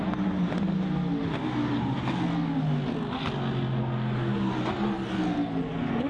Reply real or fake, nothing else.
real